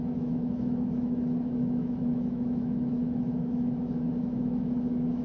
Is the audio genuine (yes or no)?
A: no